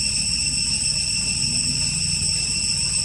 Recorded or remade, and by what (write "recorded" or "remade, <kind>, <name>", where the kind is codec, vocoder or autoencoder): recorded